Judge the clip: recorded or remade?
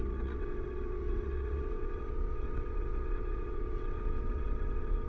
remade